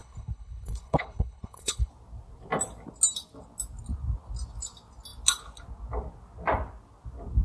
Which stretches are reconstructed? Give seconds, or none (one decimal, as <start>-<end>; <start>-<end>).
0.0-1.9